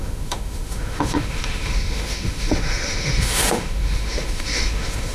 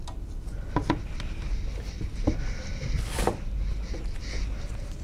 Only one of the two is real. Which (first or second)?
second